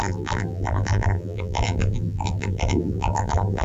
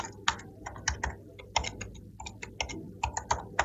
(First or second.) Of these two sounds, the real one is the second